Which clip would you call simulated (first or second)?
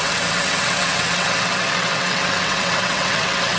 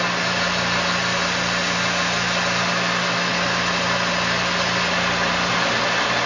first